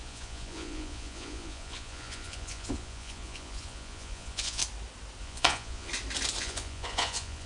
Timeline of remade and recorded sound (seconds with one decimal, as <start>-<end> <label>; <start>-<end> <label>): 0.0-4.6 remade; 4.6-5.2 recorded; 5.2-5.9 remade; 5.9-6.4 recorded; 6.4-7.5 remade